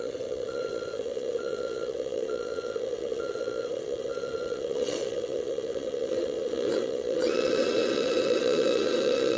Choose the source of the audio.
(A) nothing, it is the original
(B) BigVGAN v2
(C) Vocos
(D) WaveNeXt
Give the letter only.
D